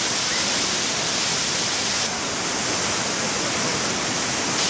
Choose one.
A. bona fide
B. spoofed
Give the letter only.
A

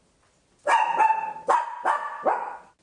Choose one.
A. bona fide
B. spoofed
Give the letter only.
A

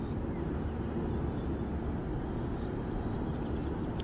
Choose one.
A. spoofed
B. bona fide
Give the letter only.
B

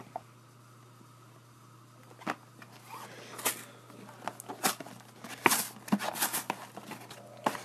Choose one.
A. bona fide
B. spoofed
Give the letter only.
A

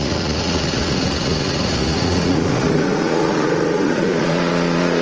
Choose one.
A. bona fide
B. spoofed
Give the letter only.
B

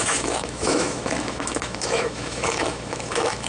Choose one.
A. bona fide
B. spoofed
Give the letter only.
B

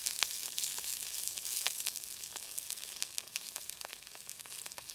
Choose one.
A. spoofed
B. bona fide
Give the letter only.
A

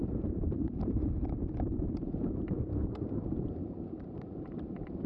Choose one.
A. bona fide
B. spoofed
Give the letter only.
B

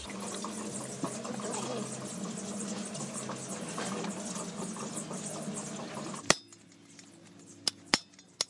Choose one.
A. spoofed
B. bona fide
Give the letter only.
B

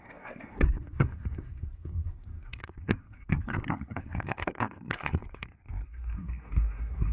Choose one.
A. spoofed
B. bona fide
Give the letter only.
A